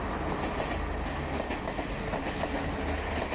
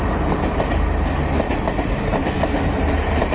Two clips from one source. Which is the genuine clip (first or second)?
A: first